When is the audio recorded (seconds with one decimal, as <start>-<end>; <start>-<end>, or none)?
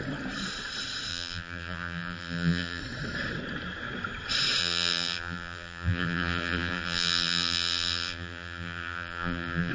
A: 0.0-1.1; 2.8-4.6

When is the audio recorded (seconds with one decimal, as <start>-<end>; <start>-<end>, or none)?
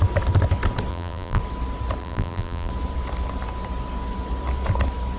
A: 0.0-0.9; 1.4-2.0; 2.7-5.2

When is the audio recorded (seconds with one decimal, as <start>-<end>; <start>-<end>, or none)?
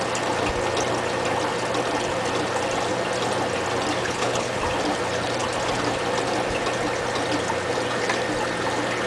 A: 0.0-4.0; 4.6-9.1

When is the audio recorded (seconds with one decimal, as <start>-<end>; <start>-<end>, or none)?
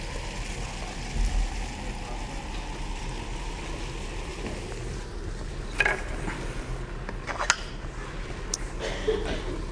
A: 0.0-9.7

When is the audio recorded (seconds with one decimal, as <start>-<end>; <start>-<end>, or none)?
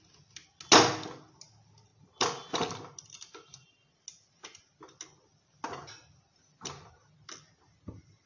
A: 0.0-8.3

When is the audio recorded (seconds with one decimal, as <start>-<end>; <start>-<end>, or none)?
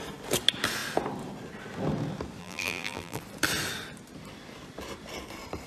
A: 0.0-2.4; 3.2-5.7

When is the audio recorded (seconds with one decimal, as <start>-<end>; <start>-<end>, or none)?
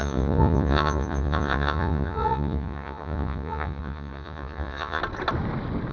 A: 5.0-5.9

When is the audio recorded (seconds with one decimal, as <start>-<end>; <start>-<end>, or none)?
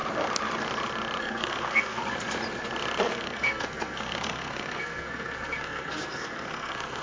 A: 0.0-1.2; 2.0-3.0